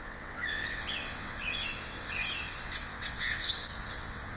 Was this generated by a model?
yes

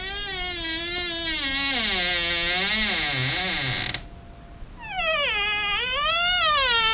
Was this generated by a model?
no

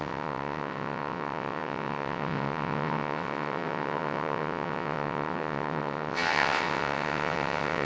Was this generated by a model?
yes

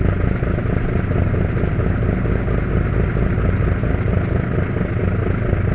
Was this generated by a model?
no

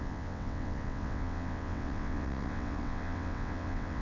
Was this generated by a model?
yes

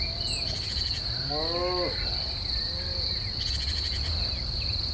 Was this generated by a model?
no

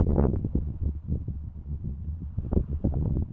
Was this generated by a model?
yes